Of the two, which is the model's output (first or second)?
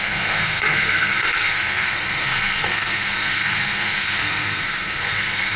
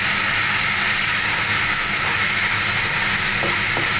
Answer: first